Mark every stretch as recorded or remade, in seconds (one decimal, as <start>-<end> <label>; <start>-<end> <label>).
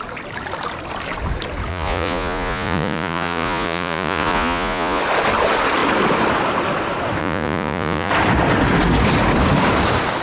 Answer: 0.0-1.7 recorded; 1.7-5.0 remade; 5.0-7.2 recorded; 7.2-8.1 remade; 8.1-10.2 recorded